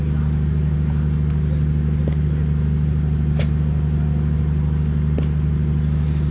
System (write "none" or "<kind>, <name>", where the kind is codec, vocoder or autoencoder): none